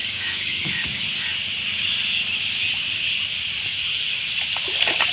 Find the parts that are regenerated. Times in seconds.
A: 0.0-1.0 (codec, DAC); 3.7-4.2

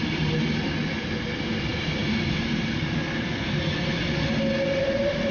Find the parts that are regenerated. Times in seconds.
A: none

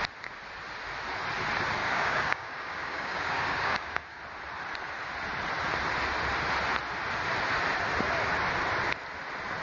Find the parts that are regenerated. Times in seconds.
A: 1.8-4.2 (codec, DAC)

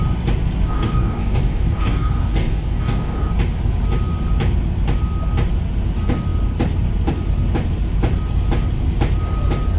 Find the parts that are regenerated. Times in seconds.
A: 0.7-3.3 (codec, DAC)